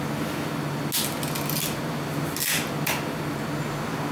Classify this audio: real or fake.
real